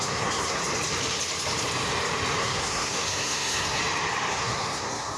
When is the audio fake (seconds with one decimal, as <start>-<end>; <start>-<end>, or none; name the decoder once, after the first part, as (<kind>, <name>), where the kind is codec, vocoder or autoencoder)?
0.0-0.6 (codec, SNAC); 2.4-3.8; 4.3-5.2